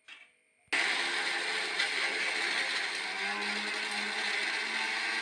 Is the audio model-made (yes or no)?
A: no